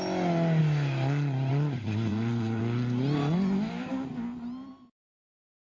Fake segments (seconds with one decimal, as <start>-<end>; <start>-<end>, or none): 2.1-2.6